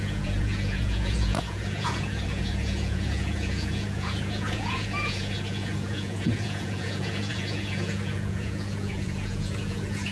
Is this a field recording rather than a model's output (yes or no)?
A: no